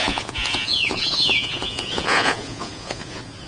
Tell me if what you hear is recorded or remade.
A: remade